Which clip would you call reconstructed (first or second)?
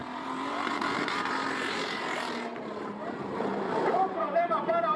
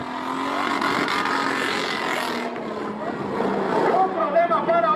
first